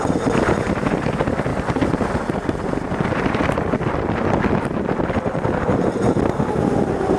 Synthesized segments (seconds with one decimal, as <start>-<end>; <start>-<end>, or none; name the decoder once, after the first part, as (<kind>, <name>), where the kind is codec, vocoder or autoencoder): 0.0-1.5 (vocoder, BigVGAN v2); 2.9-7.2